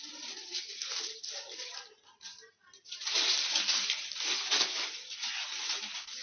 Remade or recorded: remade